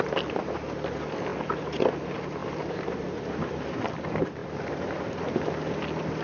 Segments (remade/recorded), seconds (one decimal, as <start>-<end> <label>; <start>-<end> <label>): 0.0-6.2 recorded